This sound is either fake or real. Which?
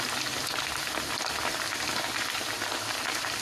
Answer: real